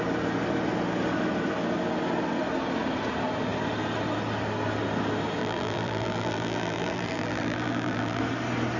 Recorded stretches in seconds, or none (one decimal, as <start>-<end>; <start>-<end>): 0.0-5.4; 8.2-8.8